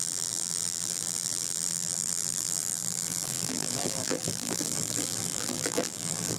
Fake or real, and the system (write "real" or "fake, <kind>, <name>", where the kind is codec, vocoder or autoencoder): fake, vocoder, BigVGAN v2